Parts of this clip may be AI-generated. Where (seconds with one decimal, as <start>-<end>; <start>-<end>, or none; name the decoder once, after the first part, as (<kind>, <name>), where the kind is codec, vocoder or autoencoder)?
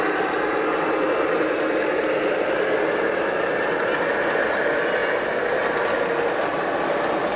none